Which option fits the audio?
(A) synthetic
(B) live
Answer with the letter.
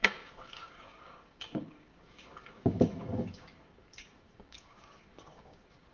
A